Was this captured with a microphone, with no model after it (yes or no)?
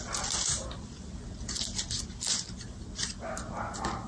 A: yes